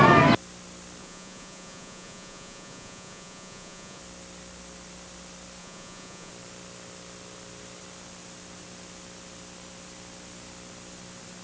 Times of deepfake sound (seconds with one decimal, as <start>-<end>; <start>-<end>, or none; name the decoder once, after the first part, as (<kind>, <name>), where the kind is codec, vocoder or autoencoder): 1.0-4.0 (vocoder, Vocos); 5.6-6.3